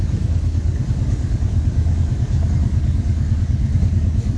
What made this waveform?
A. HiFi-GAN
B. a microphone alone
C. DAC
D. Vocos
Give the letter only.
C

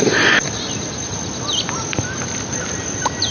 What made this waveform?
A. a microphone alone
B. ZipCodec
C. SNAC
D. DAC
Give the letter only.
A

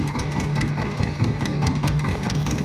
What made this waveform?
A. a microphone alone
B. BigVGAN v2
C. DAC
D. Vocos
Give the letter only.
C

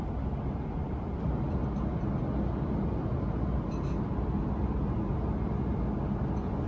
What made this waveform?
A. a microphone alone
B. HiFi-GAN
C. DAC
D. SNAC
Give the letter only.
A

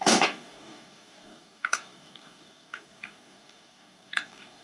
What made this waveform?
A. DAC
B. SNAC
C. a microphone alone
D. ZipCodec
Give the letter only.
A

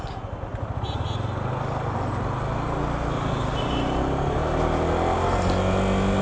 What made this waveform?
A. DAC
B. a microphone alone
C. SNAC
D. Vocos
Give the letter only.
B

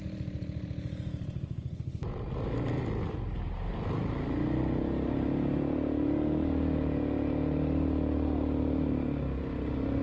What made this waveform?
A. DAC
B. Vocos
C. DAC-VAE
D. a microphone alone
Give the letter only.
D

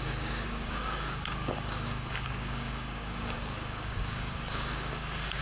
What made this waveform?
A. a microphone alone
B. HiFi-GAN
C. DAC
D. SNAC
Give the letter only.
C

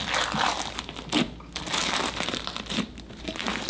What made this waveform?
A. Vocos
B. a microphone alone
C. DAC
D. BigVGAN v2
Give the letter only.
B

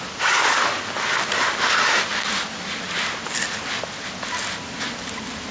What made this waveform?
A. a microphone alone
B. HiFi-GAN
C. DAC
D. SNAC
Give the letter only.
A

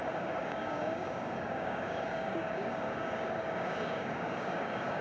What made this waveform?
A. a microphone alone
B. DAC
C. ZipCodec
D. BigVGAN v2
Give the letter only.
B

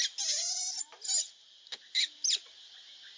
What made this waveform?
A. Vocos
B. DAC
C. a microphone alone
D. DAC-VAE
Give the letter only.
C